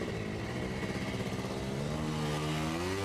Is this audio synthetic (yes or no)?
no